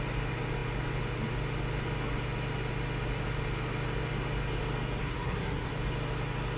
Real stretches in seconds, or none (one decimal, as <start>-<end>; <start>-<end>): 0.0-5.0; 5.7-6.6